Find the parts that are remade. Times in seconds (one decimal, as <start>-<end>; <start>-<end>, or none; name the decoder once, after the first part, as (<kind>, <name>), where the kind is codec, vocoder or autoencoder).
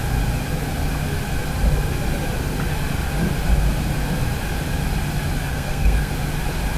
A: 5.5-6.1 (codec, SNAC)